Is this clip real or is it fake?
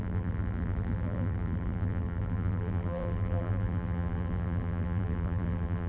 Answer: fake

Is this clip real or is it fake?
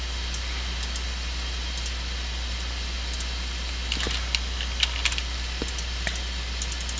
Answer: real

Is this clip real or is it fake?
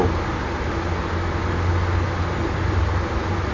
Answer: real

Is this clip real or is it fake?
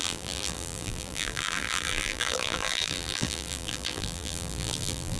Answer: fake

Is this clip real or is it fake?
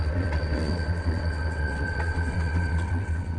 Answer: fake